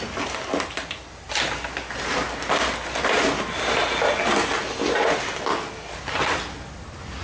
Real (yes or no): yes